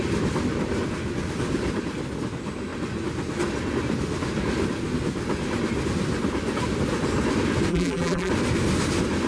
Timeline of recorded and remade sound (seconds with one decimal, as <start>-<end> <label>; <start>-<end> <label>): 0.0-7.7 recorded; 7.7-8.3 remade; 8.3-9.3 recorded